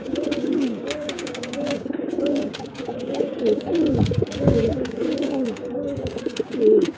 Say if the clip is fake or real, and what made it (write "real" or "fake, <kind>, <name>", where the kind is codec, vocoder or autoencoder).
fake, codec, DAC